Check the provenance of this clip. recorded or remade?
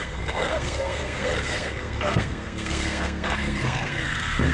remade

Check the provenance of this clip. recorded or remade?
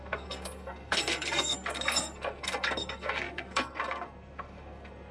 remade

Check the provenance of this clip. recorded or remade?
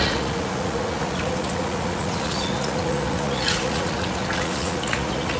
remade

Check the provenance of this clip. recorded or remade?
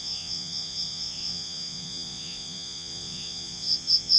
remade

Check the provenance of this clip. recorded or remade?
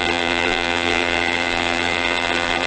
remade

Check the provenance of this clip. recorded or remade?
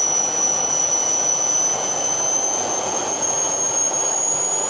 remade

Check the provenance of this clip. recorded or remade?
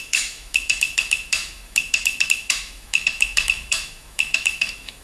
remade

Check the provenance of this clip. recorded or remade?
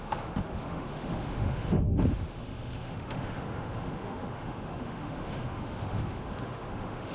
remade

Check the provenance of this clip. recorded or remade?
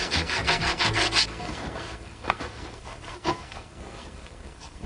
remade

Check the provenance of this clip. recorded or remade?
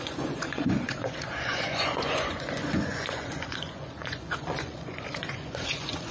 remade